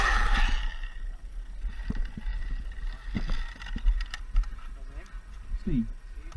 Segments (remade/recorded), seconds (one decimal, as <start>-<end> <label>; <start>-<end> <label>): 0.0-6.4 recorded